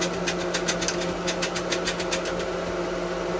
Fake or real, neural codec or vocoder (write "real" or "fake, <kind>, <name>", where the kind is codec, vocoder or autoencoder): real